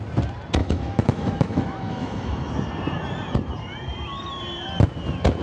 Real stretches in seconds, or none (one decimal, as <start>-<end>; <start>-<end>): 0.0-0.6; 2.5-5.4